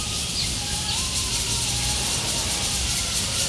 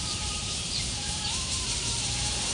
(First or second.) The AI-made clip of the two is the second